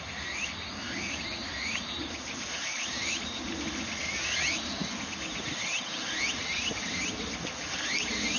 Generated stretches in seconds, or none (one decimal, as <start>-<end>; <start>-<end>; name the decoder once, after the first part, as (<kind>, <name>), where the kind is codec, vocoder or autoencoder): none